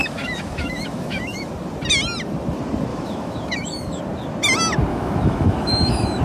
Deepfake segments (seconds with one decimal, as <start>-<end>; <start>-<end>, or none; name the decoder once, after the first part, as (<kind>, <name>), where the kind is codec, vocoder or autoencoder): 0.0-1.5 (autoencoder, DAC-VAE); 2.9-4.0; 4.9-6.2